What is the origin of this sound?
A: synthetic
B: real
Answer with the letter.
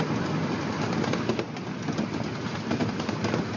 B